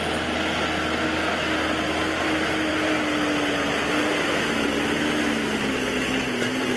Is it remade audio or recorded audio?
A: recorded